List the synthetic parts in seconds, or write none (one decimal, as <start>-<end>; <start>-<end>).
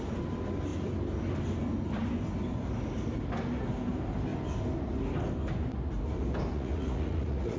6.5-7.6